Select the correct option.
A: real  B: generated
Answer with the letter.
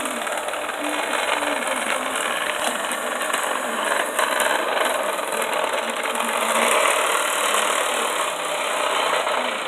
A